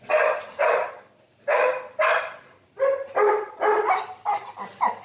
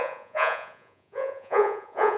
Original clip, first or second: first